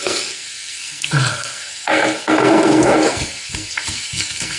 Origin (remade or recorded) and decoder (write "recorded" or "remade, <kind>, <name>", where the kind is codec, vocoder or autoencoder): remade, codec, SNAC